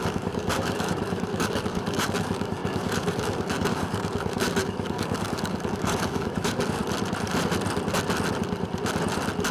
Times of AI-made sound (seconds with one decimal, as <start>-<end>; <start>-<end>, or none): 0.0-6.8